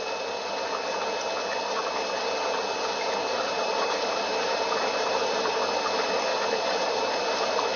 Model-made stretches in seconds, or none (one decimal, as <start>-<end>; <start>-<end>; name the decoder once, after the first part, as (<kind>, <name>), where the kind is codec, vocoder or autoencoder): 3.2-5.5 (vocoder, BigVGAN v2); 6.3-7.2